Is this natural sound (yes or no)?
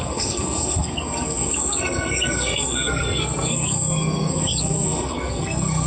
no